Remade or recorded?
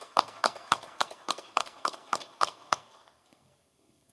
remade